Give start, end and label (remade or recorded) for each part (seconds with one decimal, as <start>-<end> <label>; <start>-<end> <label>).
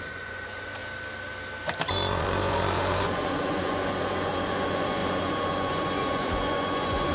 0.0-0.8 remade; 0.8-1.9 recorded; 1.9-7.1 remade